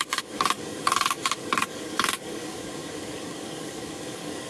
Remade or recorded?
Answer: remade